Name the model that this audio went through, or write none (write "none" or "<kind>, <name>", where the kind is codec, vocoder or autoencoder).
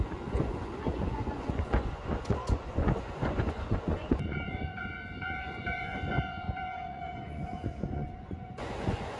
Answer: vocoder, Vocos